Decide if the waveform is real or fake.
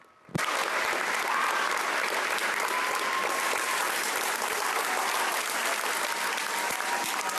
real